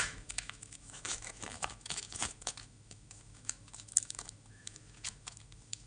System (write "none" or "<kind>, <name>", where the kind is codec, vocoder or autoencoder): autoencoder, DAC-VAE